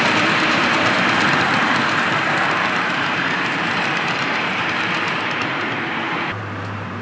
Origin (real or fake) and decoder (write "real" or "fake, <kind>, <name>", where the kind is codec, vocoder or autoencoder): fake, vocoder, BigVGAN v2